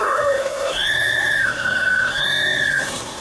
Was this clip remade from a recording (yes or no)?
yes